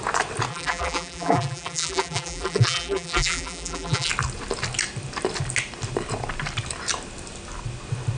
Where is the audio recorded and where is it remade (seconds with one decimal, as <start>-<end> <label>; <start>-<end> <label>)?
0.0-0.5 recorded; 0.5-4.1 remade; 4.1-8.2 recorded